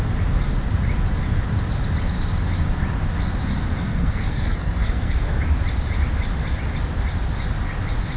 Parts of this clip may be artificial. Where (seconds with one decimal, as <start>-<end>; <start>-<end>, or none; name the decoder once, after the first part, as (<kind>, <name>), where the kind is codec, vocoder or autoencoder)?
3.9-5.4 (codec, SNAC)